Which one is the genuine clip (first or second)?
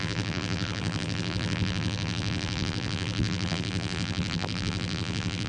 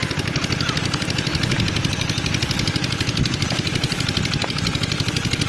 second